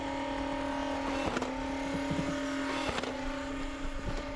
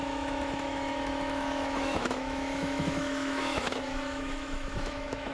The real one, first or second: first